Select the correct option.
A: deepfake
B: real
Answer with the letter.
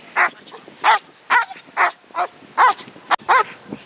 B